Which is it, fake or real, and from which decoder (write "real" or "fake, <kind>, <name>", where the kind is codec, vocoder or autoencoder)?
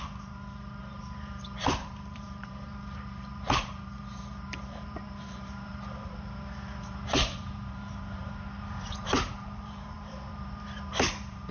fake, vocoder, BigVGAN v2